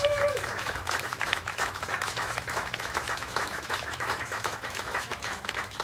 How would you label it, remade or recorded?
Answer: remade